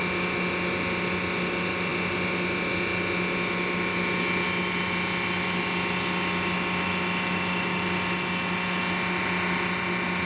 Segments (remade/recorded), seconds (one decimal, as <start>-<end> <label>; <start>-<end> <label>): 0.0-10.3 recorded